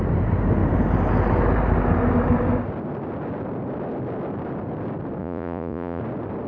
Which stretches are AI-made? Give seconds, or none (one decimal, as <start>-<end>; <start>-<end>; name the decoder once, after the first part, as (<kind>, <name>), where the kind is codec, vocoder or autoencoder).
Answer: 5.2-6.0 (vocoder, Vocos)